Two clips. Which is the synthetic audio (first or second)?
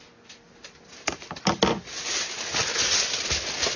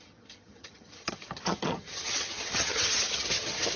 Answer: second